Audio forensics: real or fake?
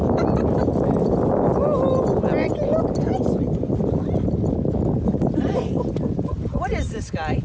real